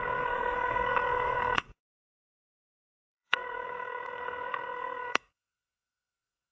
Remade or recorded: remade